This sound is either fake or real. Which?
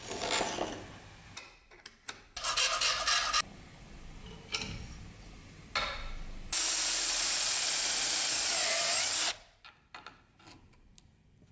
real